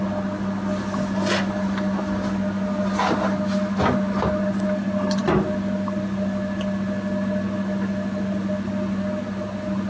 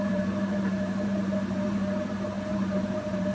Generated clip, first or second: second